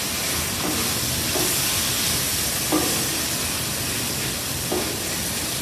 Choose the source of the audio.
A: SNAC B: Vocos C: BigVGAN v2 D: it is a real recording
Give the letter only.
D